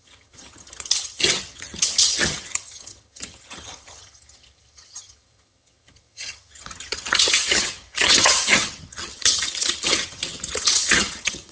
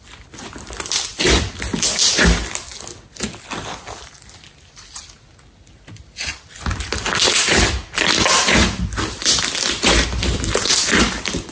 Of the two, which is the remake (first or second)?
first